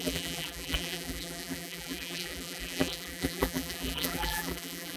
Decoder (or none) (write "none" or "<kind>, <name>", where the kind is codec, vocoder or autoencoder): vocoder, BigVGAN v2